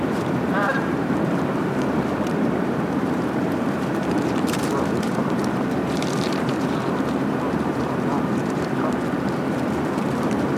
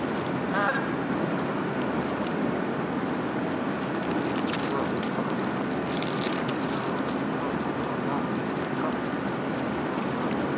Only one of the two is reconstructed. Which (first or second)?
first